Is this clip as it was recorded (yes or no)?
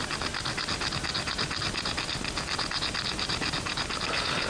yes